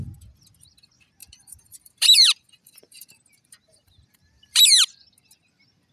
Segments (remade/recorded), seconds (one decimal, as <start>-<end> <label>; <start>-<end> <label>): 0.0-1.2 recorded; 1.2-4.6 remade; 4.6-5.9 recorded